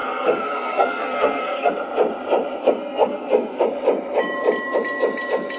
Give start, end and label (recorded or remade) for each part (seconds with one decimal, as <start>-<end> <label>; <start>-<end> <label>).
0.0-1.7 remade; 1.7-2.6 recorded; 2.6-3.6 remade; 3.6-5.6 recorded